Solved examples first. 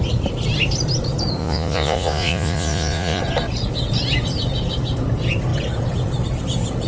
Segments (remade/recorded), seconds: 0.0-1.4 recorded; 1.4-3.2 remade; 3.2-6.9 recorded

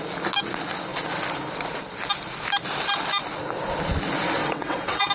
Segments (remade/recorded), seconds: 0.0-4.4 recorded; 4.4-5.1 remade

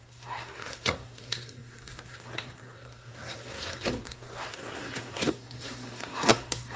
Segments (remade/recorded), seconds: 0.0-6.8 remade

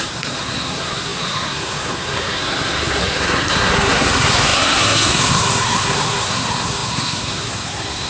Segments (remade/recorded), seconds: 0.0-8.1 remade

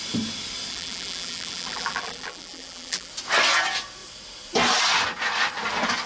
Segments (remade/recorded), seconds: 0.0-0.7 recorded; 0.7-3.1 remade; 3.1-6.1 recorded

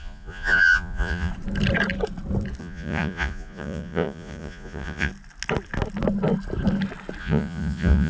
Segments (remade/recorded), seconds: 0.0-1.3 remade; 1.3-2.6 recorded; 2.6-5.1 remade; 5.1-7.2 recorded; 7.2-8.1 remade

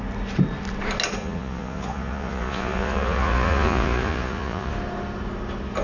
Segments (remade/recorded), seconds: 0.0-1.2 recorded; 1.2-4.7 remade; 4.7-5.8 recorded

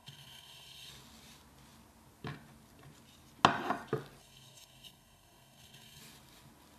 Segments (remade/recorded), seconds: 0.0-0.9 remade; 0.9-4.2 recorded; 4.2-6.0 remade; 6.0-6.8 recorded